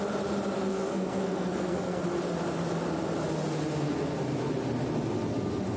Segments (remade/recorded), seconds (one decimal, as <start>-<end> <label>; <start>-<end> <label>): 0.0-0.7 recorded; 0.7-2.0 remade; 2.0-5.8 recorded